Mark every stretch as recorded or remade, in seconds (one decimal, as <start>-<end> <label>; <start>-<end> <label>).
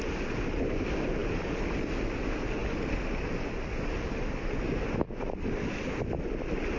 0.0-6.8 recorded